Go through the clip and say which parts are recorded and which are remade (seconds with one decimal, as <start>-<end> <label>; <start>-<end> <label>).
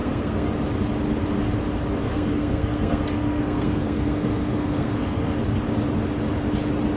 0.0-0.5 remade; 0.5-2.0 recorded; 2.0-5.4 remade; 5.4-7.0 recorded